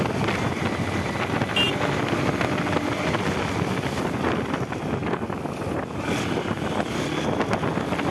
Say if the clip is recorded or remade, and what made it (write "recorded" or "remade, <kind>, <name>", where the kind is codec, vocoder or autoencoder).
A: recorded